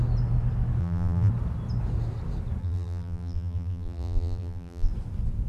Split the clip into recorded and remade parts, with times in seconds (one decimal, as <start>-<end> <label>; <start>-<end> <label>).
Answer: 0.0-0.8 recorded; 0.8-1.3 remade; 1.3-2.6 recorded; 2.6-4.9 remade; 4.9-5.5 recorded